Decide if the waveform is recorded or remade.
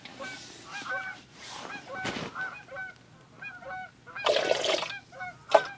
recorded